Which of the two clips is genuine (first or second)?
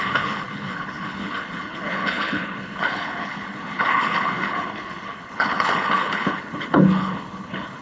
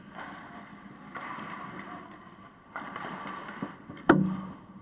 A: second